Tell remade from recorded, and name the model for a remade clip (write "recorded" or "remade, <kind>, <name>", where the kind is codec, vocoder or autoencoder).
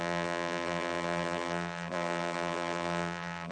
remade, vocoder, BigVGAN v2